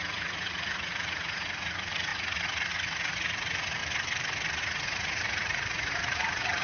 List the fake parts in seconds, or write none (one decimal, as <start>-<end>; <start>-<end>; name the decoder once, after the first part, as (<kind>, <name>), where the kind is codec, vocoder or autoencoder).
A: 0.0-3.8 (vocoder, Vocos); 4.6-6.6

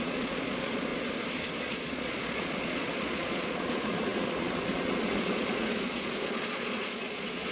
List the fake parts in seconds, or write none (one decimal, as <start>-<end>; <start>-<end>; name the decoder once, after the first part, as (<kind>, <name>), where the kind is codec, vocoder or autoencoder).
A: 0.0-0.9 (vocoder, Vocos); 1.6-7.5

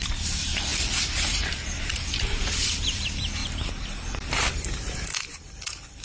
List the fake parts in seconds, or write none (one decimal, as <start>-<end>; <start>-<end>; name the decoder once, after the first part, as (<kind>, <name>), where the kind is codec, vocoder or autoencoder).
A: 0.0-3.4 (vocoder, BigVGAN v2); 4.5-6.0

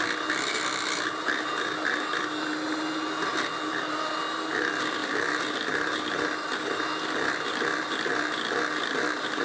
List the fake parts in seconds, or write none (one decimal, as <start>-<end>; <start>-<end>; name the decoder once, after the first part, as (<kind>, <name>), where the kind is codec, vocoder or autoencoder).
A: 5.0-6.0 (vocoder, BigVGAN v2)